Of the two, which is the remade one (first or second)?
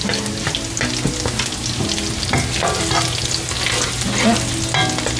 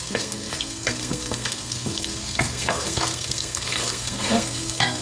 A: second